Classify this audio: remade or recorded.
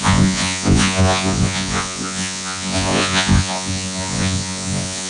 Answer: remade